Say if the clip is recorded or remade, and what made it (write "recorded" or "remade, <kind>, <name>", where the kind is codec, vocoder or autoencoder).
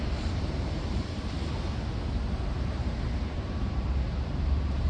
remade, vocoder, BigVGAN v2